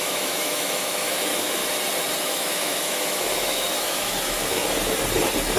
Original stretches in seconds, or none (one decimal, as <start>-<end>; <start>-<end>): 1.6-2.2; 4.6-5.6